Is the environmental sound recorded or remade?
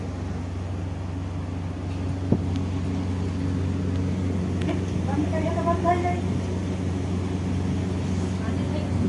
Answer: recorded